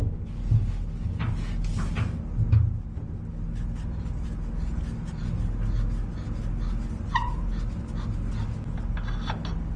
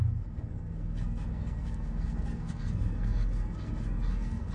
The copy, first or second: second